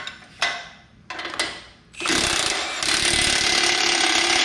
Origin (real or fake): real